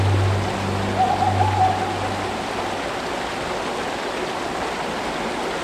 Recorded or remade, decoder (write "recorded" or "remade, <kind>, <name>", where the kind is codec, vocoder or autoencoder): recorded